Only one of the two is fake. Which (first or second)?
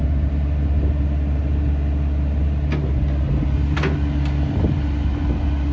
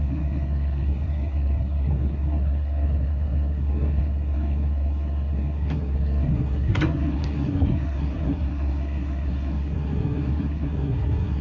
second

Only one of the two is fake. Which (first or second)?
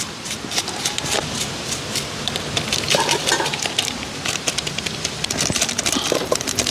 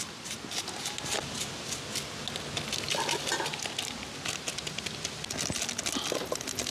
first